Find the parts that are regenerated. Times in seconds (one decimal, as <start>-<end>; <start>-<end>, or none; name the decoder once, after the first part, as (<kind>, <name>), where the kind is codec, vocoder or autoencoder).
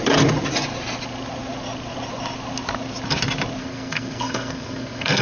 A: 3.6-5.2 (codec, SNAC)